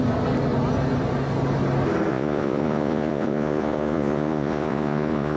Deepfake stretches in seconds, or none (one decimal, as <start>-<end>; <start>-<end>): 2.1-5.4